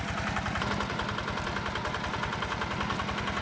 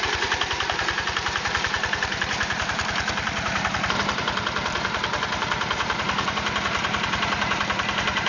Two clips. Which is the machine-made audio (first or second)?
second